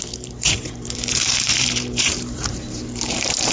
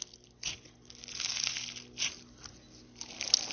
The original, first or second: second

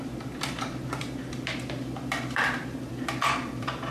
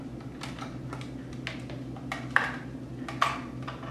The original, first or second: second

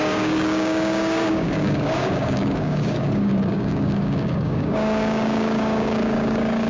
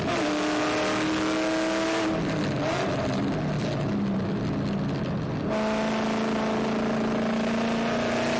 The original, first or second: second